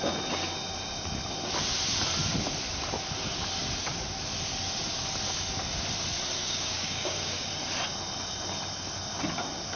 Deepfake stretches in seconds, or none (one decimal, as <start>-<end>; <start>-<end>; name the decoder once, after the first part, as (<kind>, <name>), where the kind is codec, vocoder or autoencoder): 6.4-7.5 (codec, DAC)

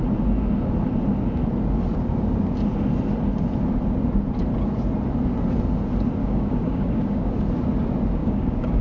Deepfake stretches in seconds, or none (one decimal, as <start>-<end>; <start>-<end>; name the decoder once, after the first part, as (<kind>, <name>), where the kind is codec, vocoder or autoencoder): 6.2-7.3 (codec, DAC); 8.2-8.8